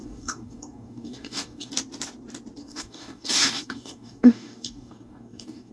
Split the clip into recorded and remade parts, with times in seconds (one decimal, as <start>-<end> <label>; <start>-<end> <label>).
0.0-1.7 remade; 1.7-2.6 recorded; 2.6-5.7 remade